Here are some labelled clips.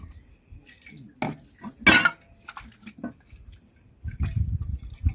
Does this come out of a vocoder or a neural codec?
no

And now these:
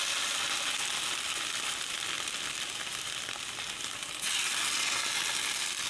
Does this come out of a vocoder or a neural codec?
no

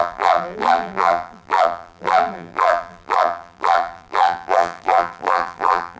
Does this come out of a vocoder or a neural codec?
yes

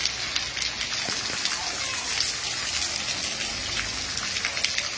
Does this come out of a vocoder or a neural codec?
no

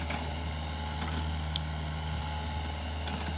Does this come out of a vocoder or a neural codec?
no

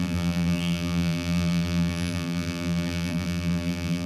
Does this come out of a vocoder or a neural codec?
yes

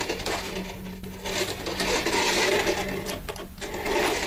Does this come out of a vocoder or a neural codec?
no